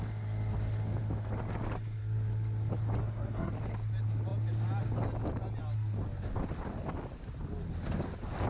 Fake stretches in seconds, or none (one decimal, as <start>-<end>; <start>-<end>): 3.0-3.5